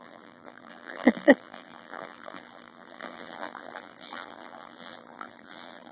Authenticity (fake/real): fake